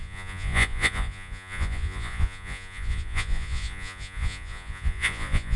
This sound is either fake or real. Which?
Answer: fake